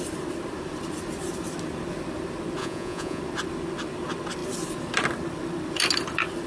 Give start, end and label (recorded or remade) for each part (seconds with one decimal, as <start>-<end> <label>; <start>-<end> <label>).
0.0-2.6 recorded; 2.6-3.2 remade; 3.2-6.5 recorded